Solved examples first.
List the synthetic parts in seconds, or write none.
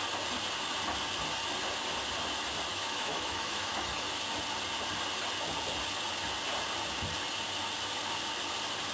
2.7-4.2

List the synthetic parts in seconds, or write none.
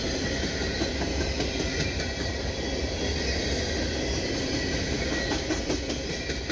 none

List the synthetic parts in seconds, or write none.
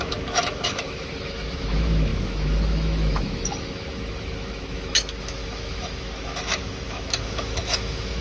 0.0-8.2